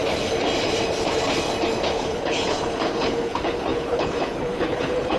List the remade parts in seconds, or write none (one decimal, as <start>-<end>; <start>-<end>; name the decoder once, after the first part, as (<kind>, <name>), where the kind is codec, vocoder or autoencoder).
1.9-5.2 (codec, HILCodec)

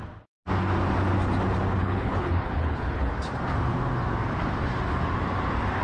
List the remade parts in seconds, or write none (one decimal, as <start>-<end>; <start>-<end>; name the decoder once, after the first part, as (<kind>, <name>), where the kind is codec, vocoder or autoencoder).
1.8-3.1 (codec, HILCodec)